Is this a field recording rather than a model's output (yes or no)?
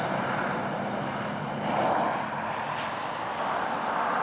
yes